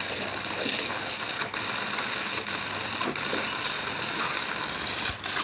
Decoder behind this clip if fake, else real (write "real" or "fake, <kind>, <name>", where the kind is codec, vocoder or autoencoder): real